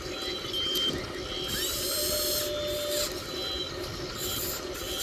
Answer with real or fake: real